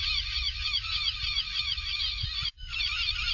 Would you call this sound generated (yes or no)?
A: yes